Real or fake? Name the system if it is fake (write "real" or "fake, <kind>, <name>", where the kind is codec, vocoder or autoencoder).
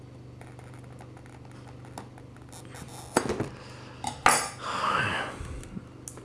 real